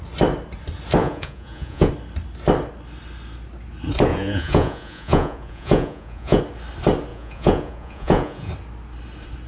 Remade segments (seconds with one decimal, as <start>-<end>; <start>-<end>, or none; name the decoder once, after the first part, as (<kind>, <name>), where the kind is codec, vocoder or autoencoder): 1.0-1.9 (vocoder, Vocos); 4.1-6.4; 7.1-8.5